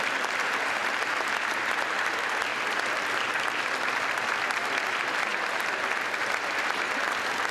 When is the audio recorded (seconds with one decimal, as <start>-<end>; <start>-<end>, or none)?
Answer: 0.0-2.5; 4.4-5.3; 6.5-7.5